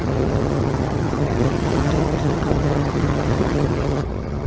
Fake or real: fake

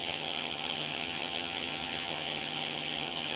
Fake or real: fake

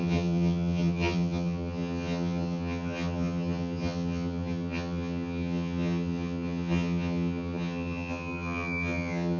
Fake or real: fake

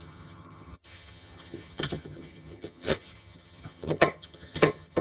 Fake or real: fake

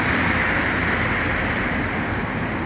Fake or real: real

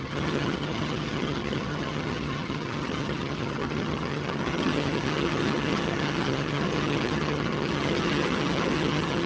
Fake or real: fake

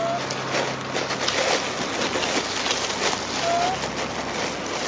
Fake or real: real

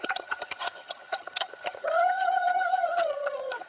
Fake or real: fake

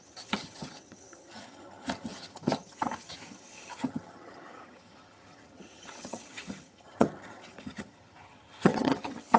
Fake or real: fake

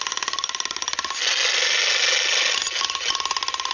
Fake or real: real